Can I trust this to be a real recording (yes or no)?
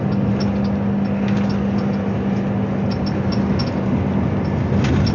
yes